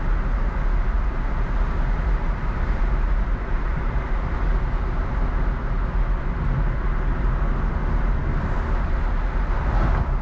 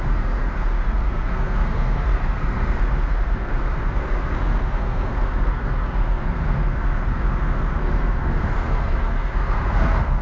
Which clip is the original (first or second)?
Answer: first